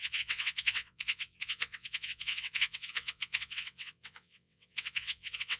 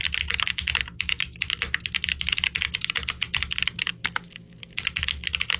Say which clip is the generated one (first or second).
first